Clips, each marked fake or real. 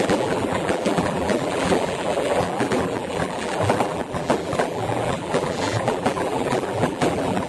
fake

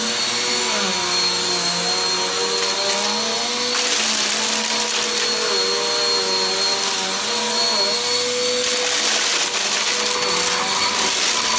real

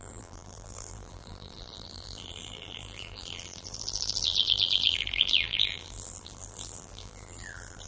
fake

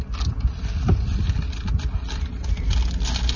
real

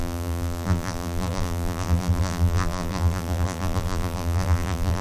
fake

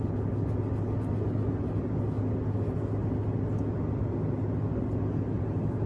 real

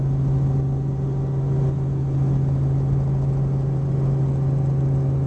real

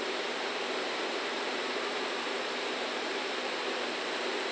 fake